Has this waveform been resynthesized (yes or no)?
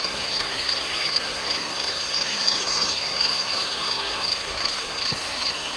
yes